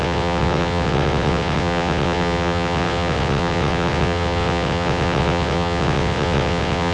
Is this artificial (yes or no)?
yes